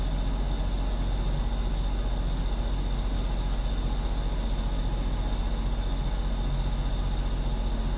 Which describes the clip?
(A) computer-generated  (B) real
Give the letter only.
B